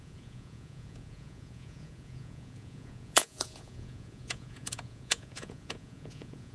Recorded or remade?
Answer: remade